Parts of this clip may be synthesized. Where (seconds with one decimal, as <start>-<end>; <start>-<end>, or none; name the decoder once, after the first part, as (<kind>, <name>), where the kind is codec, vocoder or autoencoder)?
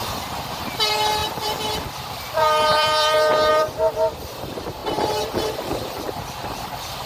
0.0-4.8 (vocoder, BigVGAN v2); 5.4-7.1